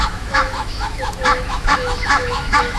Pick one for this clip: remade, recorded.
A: remade